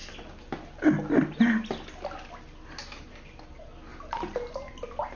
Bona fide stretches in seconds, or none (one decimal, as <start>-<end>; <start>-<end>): 0.0-5.2